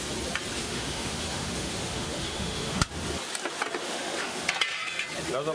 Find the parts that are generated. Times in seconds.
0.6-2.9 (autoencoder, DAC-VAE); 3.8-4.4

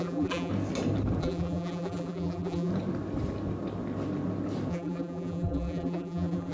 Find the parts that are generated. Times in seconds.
0.0-0.5 (vocoder, BigVGAN v2); 1.2-2.7; 4.7-6.5